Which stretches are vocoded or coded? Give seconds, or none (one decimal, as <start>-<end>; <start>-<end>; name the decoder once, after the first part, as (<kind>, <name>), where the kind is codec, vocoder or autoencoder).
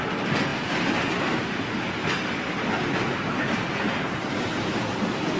none